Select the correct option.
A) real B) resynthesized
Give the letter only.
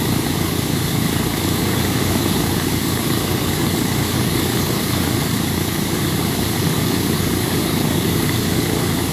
B